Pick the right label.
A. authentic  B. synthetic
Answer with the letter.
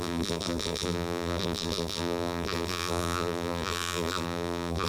B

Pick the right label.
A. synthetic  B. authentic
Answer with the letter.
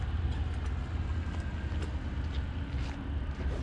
B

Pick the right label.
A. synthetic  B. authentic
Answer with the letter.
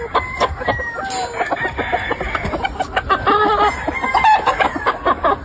B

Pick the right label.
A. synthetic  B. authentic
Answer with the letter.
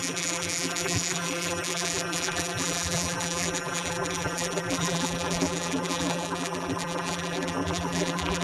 A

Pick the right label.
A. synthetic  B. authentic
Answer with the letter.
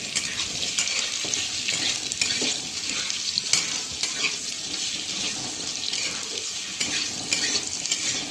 B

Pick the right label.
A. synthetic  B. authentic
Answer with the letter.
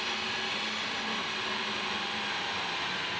A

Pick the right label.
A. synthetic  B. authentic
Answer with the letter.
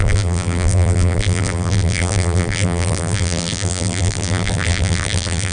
A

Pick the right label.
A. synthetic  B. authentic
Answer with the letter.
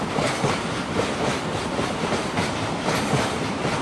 A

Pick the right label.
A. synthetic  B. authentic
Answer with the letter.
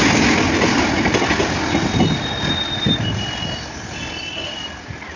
B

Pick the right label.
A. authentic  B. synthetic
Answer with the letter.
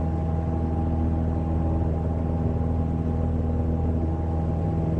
A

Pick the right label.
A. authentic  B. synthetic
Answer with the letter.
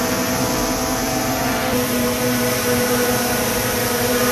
B